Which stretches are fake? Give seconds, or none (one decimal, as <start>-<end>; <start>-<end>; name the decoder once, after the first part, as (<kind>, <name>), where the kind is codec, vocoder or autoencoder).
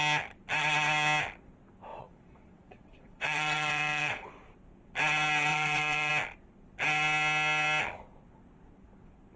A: 1.9-4.3 (vocoder, WaveNeXt); 5.5-6.1